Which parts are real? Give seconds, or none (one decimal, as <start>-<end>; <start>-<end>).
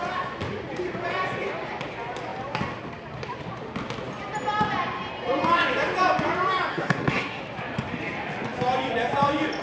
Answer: 0.0-6.7; 7.4-9.6